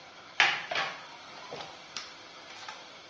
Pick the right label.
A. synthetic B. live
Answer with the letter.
A